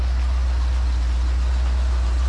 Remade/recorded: recorded